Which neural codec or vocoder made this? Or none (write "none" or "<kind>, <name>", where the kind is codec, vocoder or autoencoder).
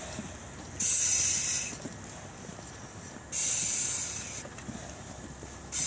none